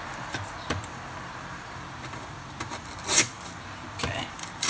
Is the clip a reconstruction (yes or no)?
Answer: yes